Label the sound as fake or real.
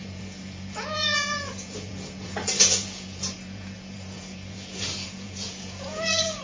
fake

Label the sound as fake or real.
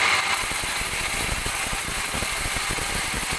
real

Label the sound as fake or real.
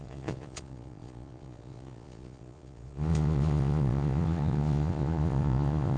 fake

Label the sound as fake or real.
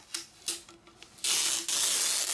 real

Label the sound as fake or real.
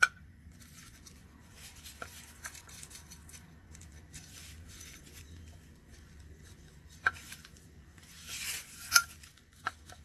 fake